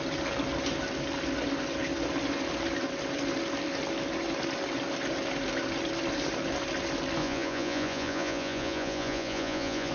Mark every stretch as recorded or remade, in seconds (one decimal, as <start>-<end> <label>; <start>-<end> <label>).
0.0-7.2 recorded; 7.2-9.9 remade